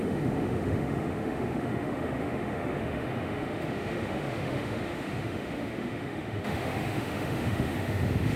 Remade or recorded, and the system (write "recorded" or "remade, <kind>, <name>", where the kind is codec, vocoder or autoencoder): remade, autoencoder, DAC-VAE